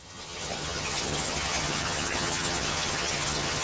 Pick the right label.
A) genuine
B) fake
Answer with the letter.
B